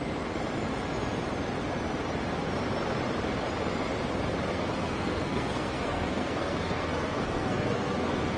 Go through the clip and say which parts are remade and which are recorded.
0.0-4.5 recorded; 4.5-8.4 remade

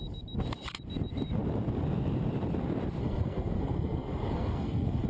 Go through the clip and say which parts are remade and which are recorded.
0.0-3.0 recorded; 3.0-5.1 remade

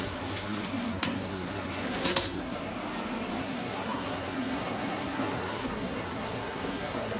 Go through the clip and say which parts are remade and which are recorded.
0.0-2.7 remade; 2.7-3.4 recorded; 3.4-7.2 remade

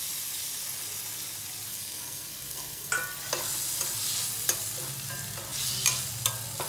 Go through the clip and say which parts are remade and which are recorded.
0.0-1.7 recorded; 1.7-2.9 remade; 2.9-6.7 recorded

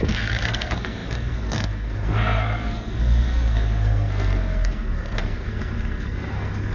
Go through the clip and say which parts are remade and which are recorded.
0.0-6.7 remade

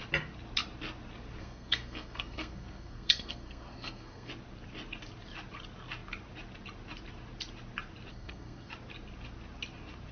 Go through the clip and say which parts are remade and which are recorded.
0.0-1.4 recorded; 1.4-4.3 remade; 4.3-8.1 recorded; 8.1-8.7 remade; 8.7-10.1 recorded